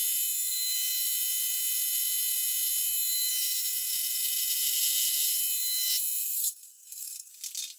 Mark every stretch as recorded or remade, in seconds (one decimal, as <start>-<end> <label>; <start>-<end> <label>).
0.0-6.2 recorded; 6.2-7.3 remade; 7.3-7.8 recorded

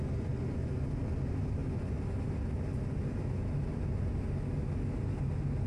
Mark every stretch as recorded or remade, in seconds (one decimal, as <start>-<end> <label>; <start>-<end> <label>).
0.0-5.7 recorded

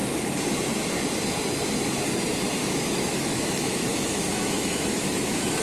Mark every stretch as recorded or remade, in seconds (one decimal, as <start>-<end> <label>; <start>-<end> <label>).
0.0-2.6 recorded; 2.6-5.6 remade

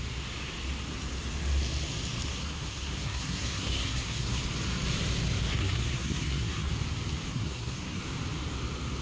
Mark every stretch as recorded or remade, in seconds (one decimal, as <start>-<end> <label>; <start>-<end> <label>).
0.0-2.3 recorded; 2.3-4.4 remade; 4.4-5.5 recorded; 5.5-6.7 remade; 6.7-7.3 recorded; 7.3-8.0 remade; 8.0-9.0 recorded

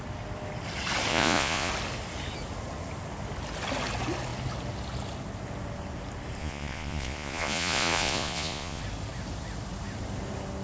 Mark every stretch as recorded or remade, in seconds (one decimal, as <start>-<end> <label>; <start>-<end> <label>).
0.0-1.1 recorded; 1.1-1.7 remade; 1.7-6.4 recorded; 6.4-8.8 remade; 8.8-10.6 recorded